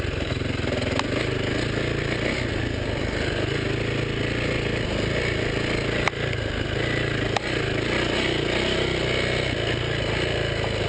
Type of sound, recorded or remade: recorded